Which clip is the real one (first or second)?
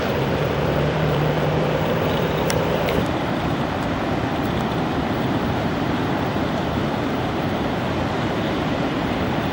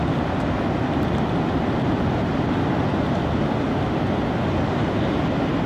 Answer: second